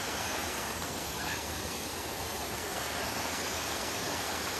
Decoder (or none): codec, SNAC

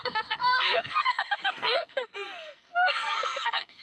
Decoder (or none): codec, SNAC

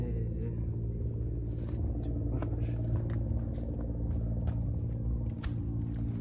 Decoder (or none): none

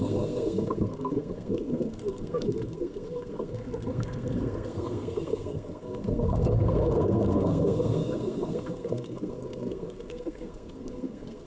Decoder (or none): codec, SNAC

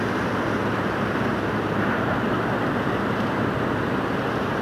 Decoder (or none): none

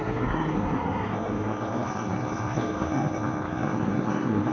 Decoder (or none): codec, SNAC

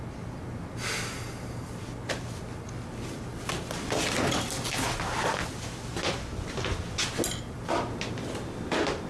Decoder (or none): none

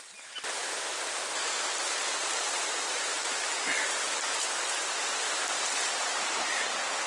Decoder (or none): none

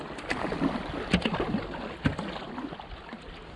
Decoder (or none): none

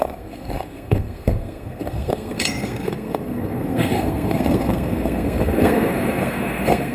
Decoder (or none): codec, SNAC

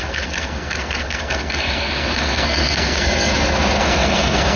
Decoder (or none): codec, SNAC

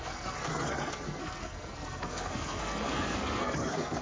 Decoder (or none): codec, SNAC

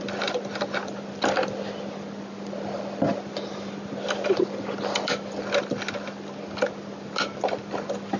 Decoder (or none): none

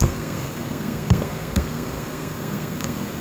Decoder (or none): codec, SNAC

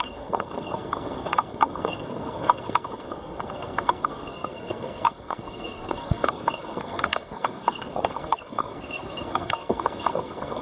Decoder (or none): codec, SNAC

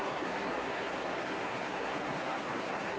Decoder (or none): codec, SNAC